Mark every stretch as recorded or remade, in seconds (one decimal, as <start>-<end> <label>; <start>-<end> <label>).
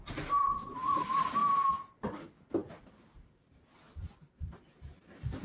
0.0-1.4 remade; 1.4-2.7 recorded; 2.7-5.4 remade